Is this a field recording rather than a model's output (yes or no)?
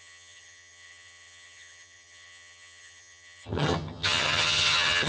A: no